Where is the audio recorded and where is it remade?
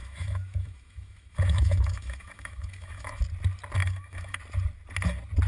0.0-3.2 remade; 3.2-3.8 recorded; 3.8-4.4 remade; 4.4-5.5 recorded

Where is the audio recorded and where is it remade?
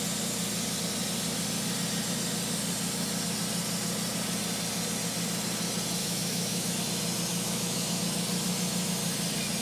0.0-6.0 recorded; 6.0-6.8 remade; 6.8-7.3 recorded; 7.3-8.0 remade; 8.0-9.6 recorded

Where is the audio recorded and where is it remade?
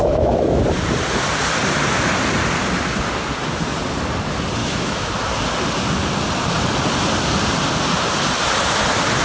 0.0-0.6 remade; 0.6-4.6 recorded; 4.6-5.1 remade; 5.1-9.2 recorded